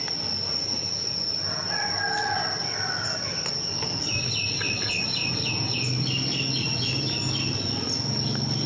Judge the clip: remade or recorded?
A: recorded